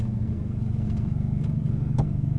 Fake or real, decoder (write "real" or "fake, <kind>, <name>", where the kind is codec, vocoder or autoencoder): fake, codec, SNAC